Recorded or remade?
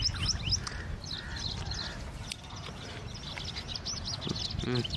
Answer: recorded